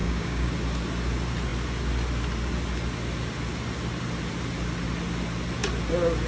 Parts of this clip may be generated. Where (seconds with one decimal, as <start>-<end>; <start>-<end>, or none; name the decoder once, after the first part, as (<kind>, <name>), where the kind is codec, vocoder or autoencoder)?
0.0-0.5 (codec, DAC)